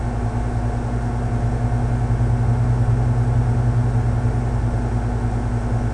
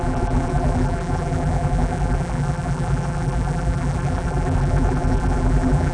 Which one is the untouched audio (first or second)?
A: first